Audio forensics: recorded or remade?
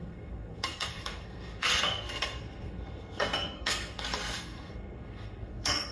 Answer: remade